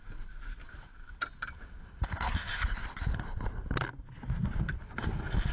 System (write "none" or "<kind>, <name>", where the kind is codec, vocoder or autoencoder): none